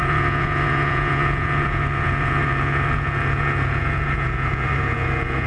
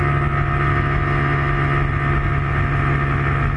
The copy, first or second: first